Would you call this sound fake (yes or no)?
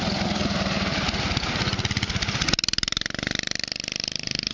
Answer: no